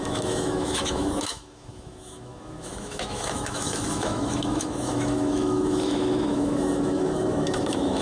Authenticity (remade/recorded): remade